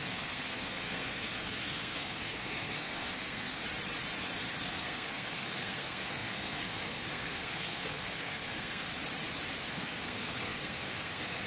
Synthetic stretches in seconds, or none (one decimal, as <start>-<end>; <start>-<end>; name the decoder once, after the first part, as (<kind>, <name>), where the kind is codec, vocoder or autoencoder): 0.0-3.6 (codec, SNAC); 4.6-8.9; 9.7-11.5